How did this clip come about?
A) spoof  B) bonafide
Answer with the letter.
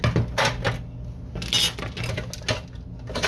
B